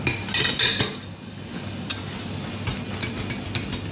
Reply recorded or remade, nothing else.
recorded